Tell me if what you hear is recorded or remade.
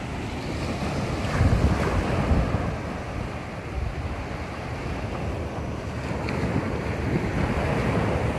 recorded